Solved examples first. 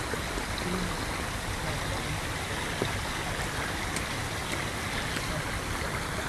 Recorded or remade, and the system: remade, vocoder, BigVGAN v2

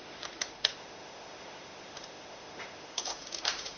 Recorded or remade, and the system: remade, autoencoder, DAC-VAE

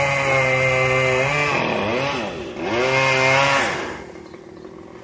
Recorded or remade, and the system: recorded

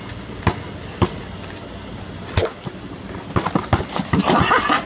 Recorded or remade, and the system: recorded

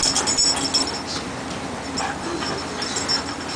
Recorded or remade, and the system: recorded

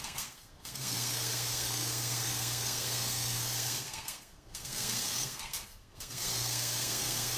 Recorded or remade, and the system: remade, codec, SNAC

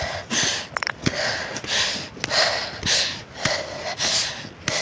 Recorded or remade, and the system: recorded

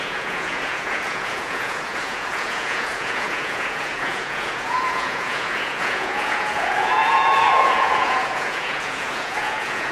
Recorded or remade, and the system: remade, vocoder, Vocos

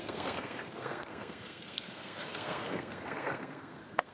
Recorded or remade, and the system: remade, codec, SNAC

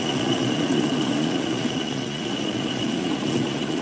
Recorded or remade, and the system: remade, vocoder, Vocos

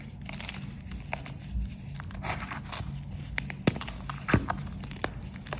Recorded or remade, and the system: recorded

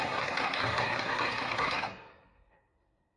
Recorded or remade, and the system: remade, codec, SNAC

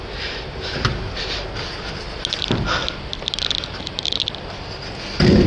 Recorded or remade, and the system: recorded